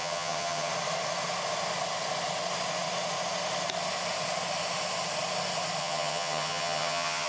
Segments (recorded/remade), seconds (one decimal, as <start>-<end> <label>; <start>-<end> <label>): 0.0-0.7 remade; 0.7-5.8 recorded; 5.8-7.3 remade